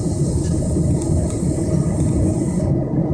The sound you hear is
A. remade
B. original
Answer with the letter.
B